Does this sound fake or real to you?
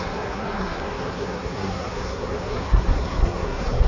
fake